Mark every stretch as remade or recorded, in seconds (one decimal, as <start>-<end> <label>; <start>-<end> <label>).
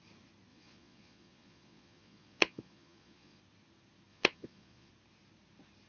0.0-0.5 recorded; 0.5-3.4 remade; 3.4-4.1 recorded; 4.1-4.9 remade; 4.9-5.9 recorded